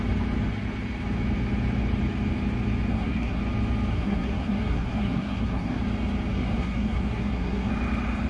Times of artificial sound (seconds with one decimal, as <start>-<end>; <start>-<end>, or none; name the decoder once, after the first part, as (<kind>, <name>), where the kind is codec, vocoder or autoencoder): 2.9-3.4 (codec, SNAC); 3.9-5.8; 6.3-7.7